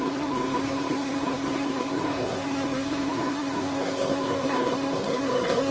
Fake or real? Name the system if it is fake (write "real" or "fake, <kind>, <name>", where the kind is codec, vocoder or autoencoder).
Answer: fake, codec, SNAC